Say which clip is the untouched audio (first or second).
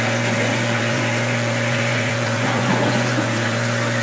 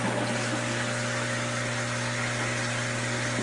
second